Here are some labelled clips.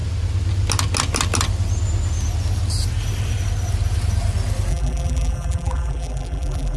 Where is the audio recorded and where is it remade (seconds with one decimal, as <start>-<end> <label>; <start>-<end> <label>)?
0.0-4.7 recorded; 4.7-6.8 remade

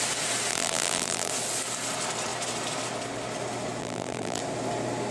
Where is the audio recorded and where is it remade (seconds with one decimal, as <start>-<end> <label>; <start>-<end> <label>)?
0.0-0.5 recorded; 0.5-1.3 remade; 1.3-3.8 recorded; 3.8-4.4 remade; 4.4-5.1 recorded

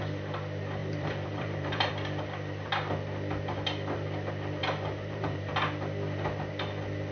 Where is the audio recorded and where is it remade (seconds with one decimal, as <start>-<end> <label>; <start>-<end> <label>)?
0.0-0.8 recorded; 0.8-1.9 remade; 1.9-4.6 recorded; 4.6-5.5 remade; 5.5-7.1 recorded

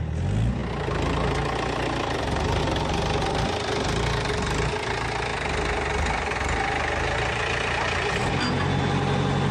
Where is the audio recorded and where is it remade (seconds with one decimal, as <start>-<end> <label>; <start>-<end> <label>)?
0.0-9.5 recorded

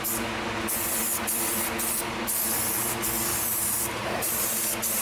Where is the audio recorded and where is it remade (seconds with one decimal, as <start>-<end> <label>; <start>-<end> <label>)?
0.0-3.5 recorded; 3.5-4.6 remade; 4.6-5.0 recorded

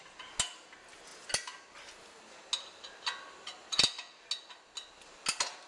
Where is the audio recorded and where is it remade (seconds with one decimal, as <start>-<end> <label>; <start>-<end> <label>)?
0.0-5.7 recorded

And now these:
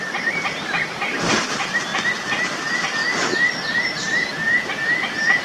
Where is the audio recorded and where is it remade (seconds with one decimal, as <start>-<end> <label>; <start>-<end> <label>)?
0.0-1.9 remade; 1.9-5.4 recorded

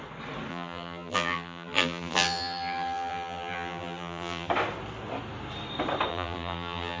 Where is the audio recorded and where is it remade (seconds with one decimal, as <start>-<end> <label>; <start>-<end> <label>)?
0.0-0.5 recorded; 0.5-4.5 remade; 4.5-6.1 recorded; 6.1-7.0 remade